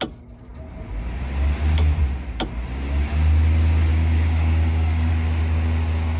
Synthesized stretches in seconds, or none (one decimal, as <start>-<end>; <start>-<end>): 3.9-5.1